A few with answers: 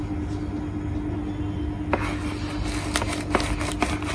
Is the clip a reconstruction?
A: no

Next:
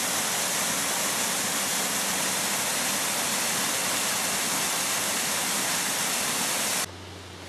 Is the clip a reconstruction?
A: no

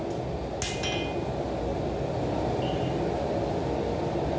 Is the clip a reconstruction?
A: no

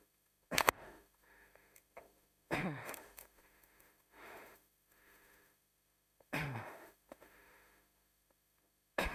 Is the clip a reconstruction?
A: yes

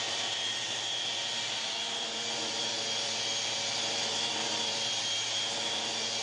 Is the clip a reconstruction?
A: yes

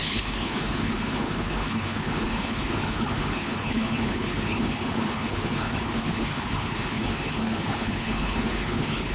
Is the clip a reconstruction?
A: yes